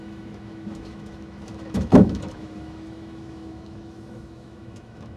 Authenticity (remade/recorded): remade